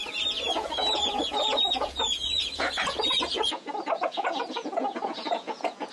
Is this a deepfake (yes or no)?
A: yes